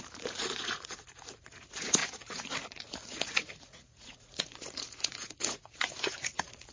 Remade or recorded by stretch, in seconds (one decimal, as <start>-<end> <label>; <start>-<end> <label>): 0.0-6.7 remade